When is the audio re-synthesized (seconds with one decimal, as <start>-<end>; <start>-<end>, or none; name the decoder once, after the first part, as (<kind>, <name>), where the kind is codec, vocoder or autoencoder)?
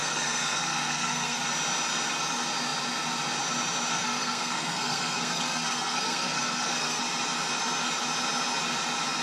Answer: 0.0-1.4 (codec, SNAC); 3.9-7.0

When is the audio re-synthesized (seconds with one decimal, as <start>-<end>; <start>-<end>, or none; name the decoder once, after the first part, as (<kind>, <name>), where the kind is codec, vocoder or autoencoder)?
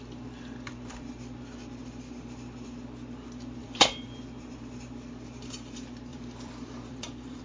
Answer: 3.6-4.2 (vocoder, BigVGAN v2); 6.1-7.4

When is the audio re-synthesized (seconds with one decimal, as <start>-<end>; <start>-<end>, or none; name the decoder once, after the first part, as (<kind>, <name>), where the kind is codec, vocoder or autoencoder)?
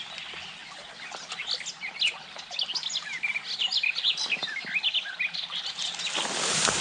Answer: none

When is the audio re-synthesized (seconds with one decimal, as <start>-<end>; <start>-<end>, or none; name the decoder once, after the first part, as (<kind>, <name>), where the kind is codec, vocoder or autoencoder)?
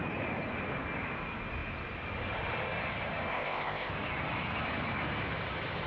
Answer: 3.3-3.9 (codec, ZipCodec)